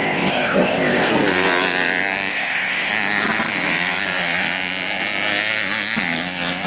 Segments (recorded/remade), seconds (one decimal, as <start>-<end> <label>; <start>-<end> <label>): 0.0-1.1 remade; 1.1-2.3 recorded; 2.3-2.9 remade; 2.9-6.7 recorded

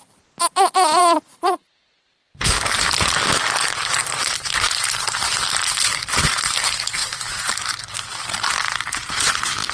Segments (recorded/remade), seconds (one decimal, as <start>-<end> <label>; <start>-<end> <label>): 0.0-9.7 recorded

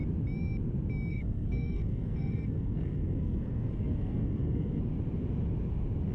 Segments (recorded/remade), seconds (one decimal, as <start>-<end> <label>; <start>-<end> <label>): 0.0-1.1 recorded; 1.1-4.8 remade; 4.8-6.1 recorded

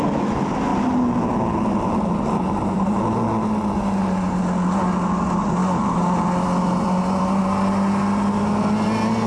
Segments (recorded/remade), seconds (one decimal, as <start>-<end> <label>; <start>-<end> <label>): 0.0-9.3 recorded

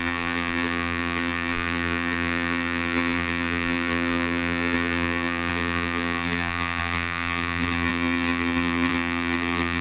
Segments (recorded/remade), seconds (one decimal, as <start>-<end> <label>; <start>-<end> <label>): 0.0-9.8 remade